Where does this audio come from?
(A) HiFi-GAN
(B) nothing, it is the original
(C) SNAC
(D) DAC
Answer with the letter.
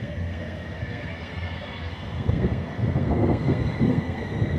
C